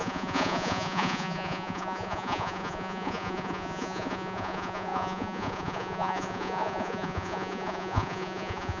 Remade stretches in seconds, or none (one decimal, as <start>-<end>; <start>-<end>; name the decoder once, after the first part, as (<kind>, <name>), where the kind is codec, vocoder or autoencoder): 0.0-8.8 (vocoder, Vocos)